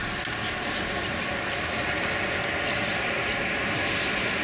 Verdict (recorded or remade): recorded